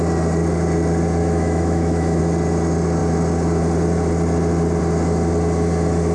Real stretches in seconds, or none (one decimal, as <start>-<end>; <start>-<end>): 0.0-1.2; 2.2-6.1